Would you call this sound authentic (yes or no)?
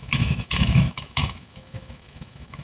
no